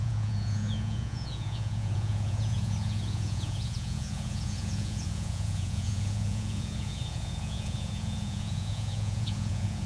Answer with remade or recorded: remade